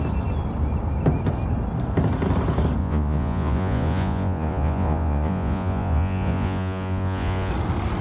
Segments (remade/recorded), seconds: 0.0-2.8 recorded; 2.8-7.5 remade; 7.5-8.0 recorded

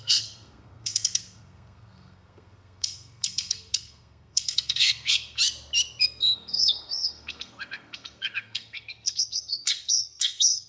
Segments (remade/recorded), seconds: 0.0-5.4 remade; 5.4-6.0 recorded; 6.0-10.7 remade

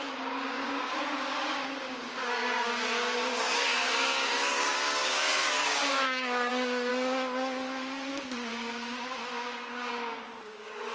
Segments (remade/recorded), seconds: 0.0-6.9 remade; 6.9-8.1 recorded; 8.1-10.9 remade

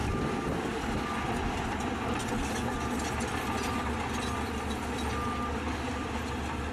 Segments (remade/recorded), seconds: 0.0-6.7 recorded